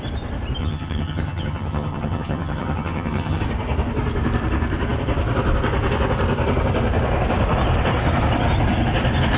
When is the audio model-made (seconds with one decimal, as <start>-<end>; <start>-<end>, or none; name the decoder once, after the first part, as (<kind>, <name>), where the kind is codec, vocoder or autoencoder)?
0.6-3.4 (vocoder, HiFi-GAN)